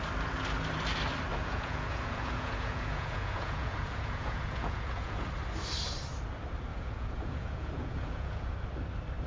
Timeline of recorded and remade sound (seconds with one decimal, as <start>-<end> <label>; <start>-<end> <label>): 0.0-1.3 recorded; 1.3-5.3 remade; 5.3-6.7 recorded; 6.7-8.5 remade; 8.5-9.3 recorded